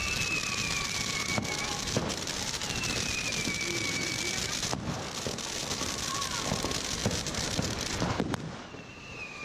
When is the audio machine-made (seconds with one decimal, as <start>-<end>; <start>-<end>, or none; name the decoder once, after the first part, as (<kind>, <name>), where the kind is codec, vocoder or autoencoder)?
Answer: none